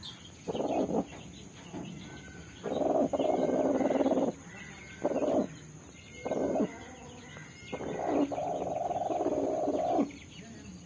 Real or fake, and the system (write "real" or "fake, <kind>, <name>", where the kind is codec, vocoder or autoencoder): real